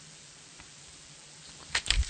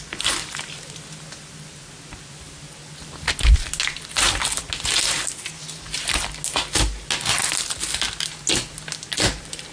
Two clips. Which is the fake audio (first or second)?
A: first